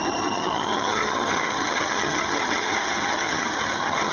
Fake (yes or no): yes